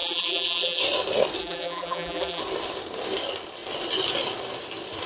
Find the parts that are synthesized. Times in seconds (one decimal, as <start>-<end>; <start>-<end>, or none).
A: 0.0-0.8; 1.4-2.4